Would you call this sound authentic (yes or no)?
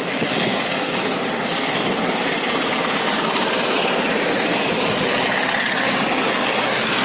yes